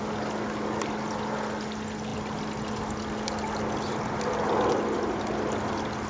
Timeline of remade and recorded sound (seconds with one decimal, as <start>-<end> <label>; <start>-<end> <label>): 0.0-6.1 recorded